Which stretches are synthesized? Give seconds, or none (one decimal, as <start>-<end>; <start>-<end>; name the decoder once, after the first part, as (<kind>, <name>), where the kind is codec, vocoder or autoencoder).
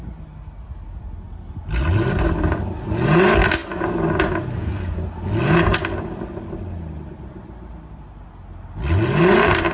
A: none